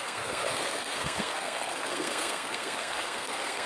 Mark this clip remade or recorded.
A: remade